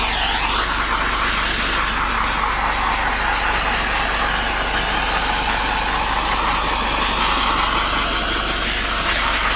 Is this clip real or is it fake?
real